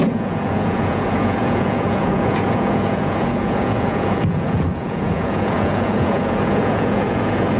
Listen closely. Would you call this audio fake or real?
fake